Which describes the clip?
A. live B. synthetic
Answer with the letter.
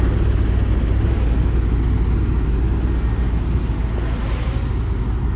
A